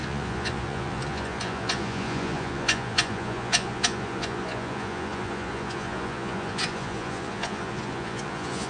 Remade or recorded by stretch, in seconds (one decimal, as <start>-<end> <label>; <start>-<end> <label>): 0.0-8.7 remade